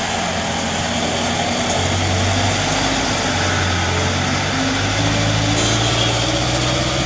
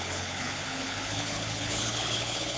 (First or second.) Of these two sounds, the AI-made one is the second